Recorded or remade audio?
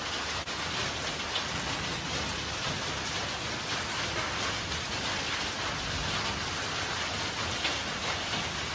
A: recorded